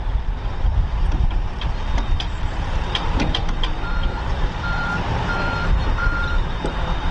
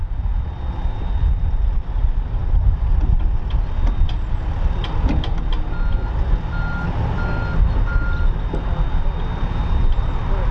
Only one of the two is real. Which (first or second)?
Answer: second